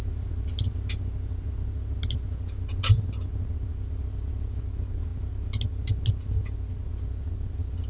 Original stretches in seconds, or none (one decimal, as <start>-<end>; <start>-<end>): 0.0-7.9